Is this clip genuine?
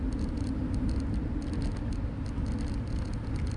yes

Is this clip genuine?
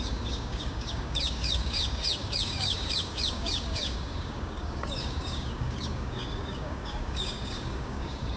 no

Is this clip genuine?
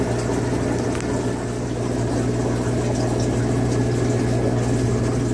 yes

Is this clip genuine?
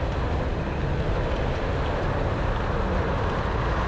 yes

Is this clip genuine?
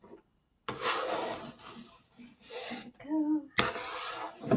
yes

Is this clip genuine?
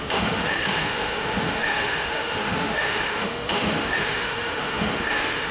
no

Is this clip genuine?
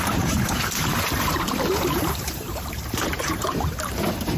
no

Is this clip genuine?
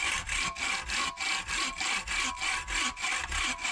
yes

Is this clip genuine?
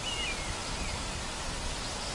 yes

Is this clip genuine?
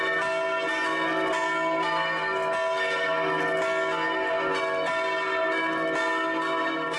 yes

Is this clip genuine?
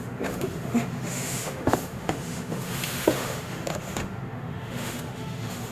no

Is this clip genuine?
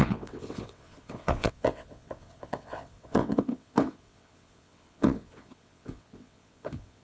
no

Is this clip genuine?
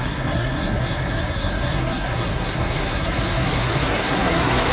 no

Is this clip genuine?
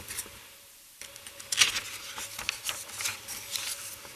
yes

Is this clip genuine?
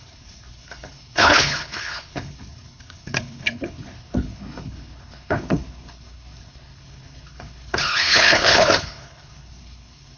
no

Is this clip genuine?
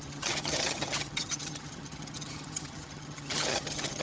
no